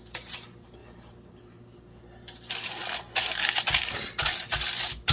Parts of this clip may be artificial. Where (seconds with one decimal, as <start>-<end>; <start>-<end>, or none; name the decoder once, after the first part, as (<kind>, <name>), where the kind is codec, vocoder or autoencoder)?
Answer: none

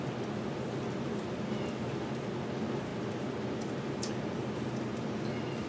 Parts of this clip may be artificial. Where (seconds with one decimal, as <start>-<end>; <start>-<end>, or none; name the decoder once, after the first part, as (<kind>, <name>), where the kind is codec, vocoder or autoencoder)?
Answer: none

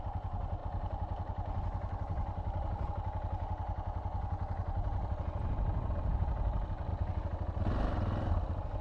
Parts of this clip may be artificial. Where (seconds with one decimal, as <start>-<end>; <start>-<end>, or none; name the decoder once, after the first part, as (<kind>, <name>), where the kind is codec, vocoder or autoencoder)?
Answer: none